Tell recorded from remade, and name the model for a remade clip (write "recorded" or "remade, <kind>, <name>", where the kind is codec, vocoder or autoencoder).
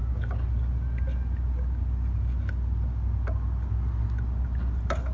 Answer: recorded